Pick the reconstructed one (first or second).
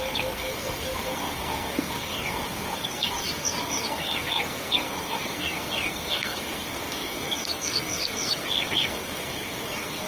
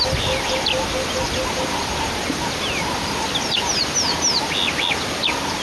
first